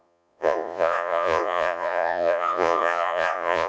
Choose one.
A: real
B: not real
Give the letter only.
B